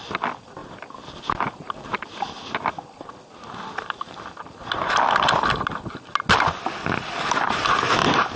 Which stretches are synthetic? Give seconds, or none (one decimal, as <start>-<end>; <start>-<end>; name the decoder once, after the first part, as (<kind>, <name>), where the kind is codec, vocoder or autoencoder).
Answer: none